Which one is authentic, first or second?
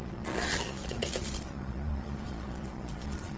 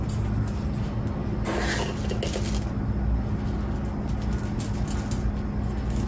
second